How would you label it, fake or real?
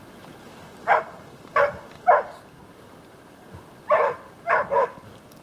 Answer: real